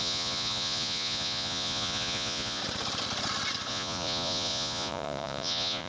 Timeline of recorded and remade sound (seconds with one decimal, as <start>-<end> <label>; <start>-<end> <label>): 0.0-2.6 remade; 2.6-3.7 recorded; 3.7-5.9 remade